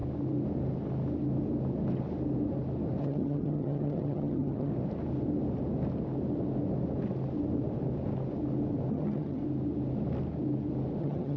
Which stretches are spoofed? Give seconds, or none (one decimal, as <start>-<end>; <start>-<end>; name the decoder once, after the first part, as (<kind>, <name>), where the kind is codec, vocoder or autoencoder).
3.0-4.7 (vocoder, HiFi-GAN); 8.9-9.4; 11.0-11.4